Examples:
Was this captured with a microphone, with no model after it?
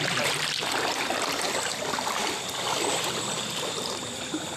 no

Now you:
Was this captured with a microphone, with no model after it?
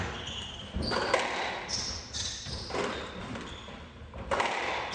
yes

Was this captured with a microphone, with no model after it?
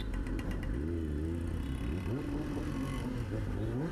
yes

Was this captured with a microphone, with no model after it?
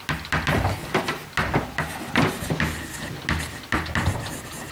yes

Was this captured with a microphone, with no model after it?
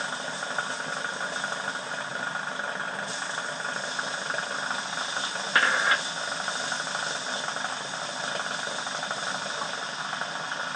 yes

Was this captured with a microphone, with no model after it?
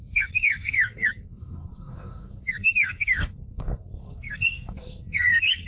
no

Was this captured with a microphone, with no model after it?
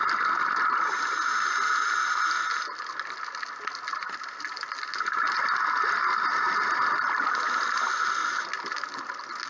yes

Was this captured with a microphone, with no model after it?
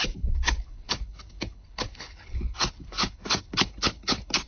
no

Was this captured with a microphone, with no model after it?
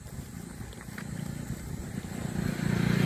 yes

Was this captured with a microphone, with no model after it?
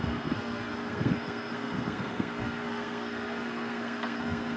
no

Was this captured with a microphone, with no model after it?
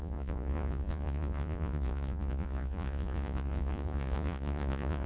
no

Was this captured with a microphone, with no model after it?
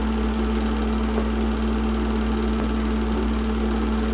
yes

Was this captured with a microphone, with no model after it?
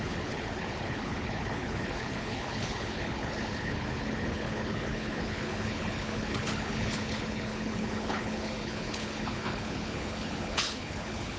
no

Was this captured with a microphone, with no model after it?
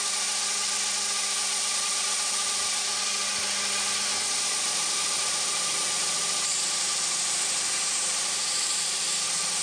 yes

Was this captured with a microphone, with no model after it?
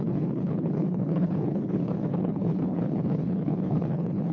no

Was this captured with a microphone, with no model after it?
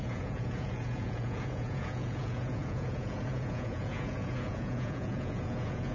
no